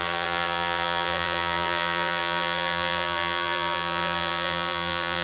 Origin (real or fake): fake